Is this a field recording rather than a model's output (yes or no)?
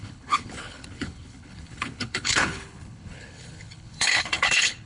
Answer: no